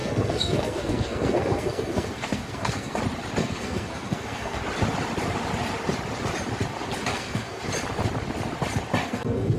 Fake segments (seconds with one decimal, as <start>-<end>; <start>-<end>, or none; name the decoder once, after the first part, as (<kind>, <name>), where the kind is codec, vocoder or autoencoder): 0.0-3.0 (codec, SNAC); 3.4-4.6; 7.1-7.6; 9.0-9.6